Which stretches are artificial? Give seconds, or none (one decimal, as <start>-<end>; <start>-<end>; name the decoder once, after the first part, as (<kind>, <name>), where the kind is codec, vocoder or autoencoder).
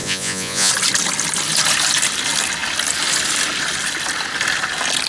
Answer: 0.0-0.7 (vocoder, Vocos)